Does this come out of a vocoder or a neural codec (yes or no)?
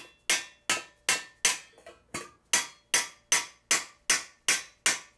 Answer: no